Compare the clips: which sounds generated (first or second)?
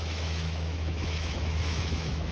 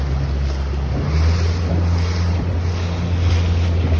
first